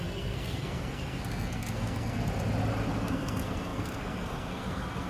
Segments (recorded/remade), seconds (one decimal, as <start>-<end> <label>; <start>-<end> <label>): 0.0-2.2 remade; 2.2-2.9 recorded; 2.9-5.1 remade